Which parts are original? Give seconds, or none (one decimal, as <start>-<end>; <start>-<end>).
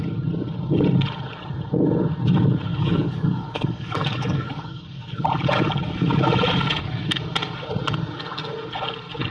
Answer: 0.0-2.7; 5.2-9.3